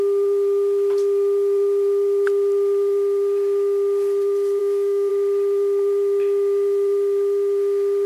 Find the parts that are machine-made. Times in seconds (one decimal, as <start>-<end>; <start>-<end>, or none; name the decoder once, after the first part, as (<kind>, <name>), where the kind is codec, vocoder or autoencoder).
4.6-5.1 (autoencoder, DAC-VAE)